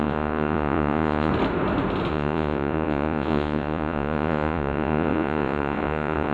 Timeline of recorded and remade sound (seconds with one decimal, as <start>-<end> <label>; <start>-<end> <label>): 0.0-1.3 remade; 1.3-2.1 recorded; 2.1-6.3 remade